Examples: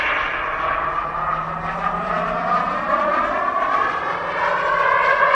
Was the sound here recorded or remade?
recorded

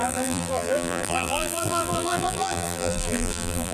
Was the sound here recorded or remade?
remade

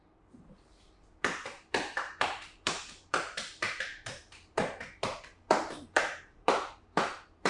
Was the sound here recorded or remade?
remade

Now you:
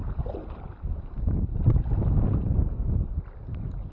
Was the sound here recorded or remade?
recorded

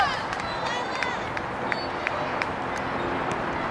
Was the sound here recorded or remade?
remade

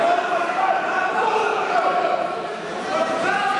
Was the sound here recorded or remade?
remade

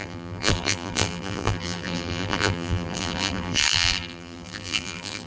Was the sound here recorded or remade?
remade